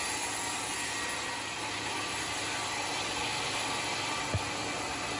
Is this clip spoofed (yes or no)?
no